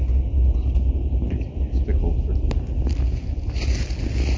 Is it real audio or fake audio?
real